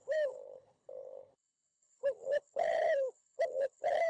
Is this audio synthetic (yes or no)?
yes